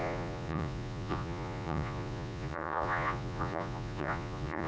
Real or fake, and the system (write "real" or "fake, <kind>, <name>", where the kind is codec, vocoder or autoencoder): fake, vocoder, Vocos